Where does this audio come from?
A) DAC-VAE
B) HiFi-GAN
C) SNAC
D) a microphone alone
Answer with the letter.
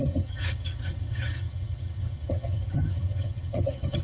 B